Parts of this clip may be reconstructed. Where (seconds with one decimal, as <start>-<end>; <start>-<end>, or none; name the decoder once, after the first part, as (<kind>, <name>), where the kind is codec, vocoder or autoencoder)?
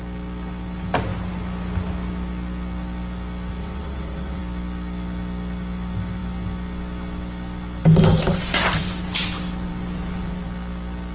3.6-4.4 (vocoder, WaveNeXt)